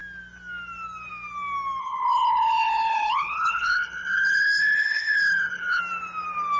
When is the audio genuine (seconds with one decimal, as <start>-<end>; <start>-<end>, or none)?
0.0-1.8; 5.8-6.6